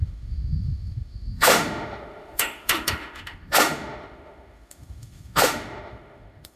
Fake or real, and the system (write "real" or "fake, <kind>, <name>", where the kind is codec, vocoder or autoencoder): fake, autoencoder, DAC-VAE